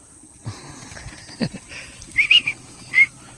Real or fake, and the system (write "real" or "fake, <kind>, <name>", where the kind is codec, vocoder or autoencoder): real